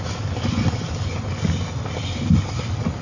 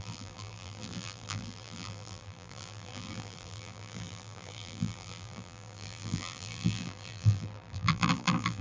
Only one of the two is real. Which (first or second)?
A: first